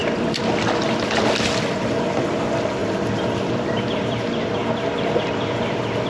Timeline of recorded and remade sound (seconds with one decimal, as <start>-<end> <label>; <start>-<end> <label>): 0.0-4.6 remade; 4.6-5.2 recorded; 5.2-6.1 remade